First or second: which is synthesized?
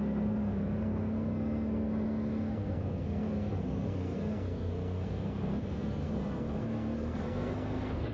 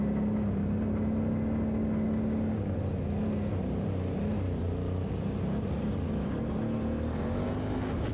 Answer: first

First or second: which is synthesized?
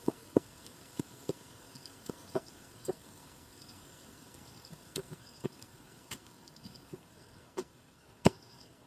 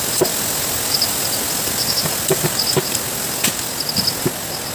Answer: first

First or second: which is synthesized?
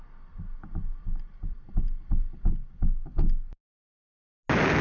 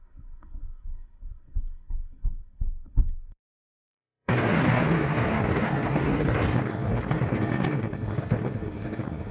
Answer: second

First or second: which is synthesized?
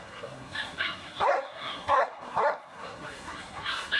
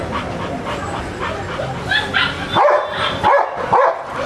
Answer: first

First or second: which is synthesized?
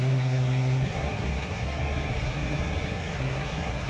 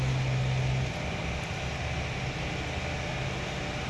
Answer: first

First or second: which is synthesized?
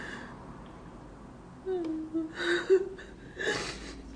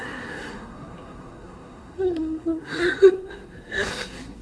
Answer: second